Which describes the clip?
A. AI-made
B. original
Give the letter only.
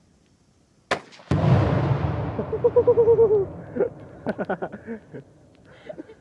B